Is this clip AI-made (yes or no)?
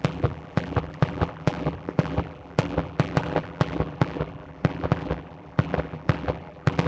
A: yes